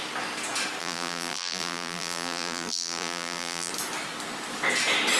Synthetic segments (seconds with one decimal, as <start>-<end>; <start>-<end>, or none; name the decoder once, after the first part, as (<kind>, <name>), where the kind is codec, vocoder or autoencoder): 0.8-3.7 (vocoder, BigVGAN v2)